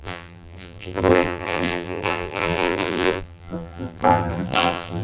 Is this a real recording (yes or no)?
no